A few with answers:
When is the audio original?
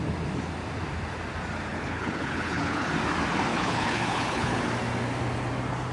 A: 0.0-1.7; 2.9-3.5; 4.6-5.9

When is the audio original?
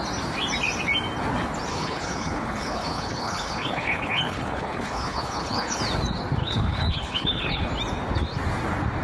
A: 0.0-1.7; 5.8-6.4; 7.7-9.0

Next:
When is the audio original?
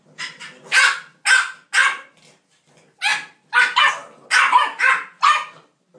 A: 0.0-6.0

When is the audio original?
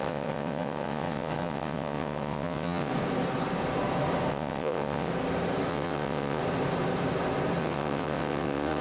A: 2.9-4.3; 5.1-5.7; 6.4-7.6